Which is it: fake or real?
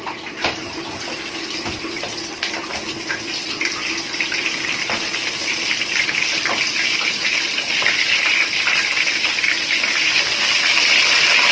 real